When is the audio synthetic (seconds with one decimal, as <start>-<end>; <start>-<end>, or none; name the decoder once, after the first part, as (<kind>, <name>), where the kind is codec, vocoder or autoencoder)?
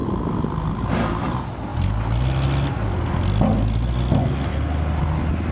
none